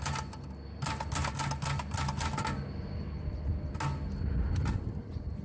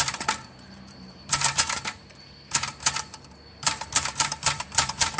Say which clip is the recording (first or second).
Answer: first